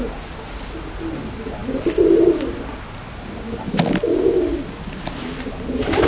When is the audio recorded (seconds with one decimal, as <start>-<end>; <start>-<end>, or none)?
0.0-6.1